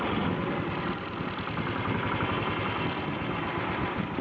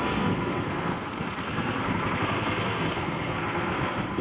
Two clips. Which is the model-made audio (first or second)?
second